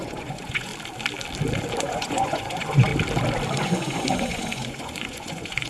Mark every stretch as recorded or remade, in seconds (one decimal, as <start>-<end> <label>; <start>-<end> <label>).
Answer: 0.0-0.7 remade; 0.7-1.8 recorded; 1.8-2.9 remade; 2.9-3.6 recorded; 3.6-5.7 remade